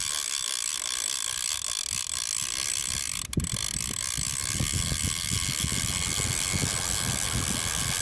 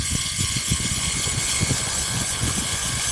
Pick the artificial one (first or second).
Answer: second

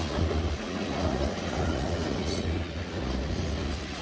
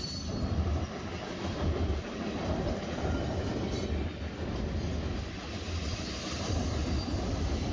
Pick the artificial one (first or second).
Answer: first